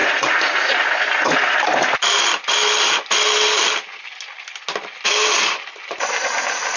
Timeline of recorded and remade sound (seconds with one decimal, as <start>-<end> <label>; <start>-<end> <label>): 0.0-0.7 remade; 0.7-6.8 recorded